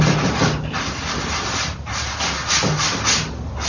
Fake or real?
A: real